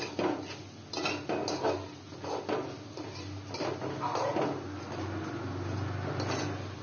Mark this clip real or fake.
real